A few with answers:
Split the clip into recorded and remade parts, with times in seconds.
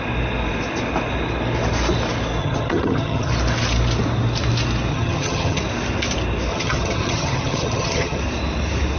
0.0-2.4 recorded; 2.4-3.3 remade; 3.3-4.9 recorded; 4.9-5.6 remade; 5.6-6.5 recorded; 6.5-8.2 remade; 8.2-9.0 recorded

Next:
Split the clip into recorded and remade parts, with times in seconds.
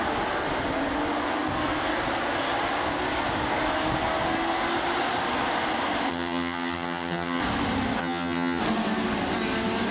0.0-6.1 recorded; 6.1-7.4 remade; 7.4-8.0 recorded; 8.0-8.6 remade; 8.6-9.9 recorded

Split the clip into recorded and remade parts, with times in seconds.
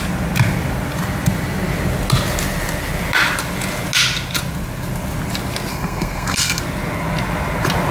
0.0-5.7 recorded; 5.7-6.6 remade; 6.6-7.9 recorded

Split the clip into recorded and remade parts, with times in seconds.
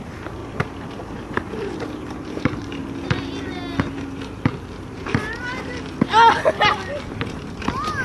0.0-0.4 remade; 0.4-0.9 recorded; 0.9-2.8 remade; 2.8-3.8 recorded; 3.8-5.5 remade; 5.5-6.6 recorded; 6.6-8.0 remade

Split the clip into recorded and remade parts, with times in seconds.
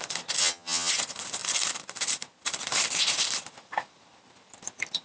0.0-0.4 recorded; 0.4-0.9 remade; 0.9-5.0 recorded